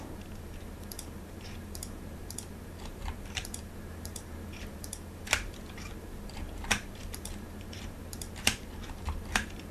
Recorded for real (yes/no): no